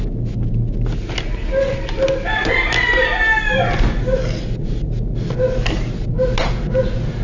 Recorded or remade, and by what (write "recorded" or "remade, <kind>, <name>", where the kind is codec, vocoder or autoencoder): recorded